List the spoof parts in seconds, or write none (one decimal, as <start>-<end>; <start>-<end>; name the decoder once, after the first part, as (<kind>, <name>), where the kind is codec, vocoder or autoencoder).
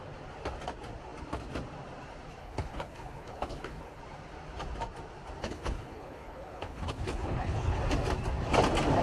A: 2.4-4.0 (codec, HILCodec); 5.4-7.8